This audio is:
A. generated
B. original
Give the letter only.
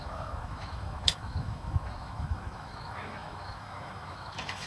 A